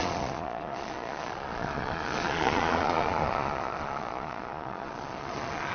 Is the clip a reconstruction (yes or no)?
yes